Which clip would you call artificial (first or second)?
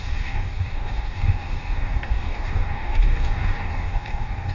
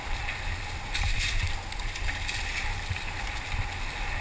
first